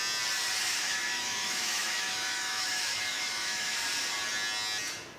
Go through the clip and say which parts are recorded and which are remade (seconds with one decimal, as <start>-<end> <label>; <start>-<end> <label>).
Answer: 0.0-0.7 recorded; 0.7-3.8 remade; 3.8-5.2 recorded

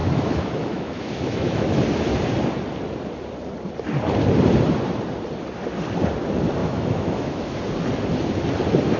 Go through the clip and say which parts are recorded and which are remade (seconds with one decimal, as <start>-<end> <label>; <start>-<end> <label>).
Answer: 0.0-1.8 remade; 1.8-6.6 recorded; 6.6-7.6 remade; 7.6-9.0 recorded